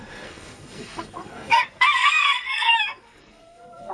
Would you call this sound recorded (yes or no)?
no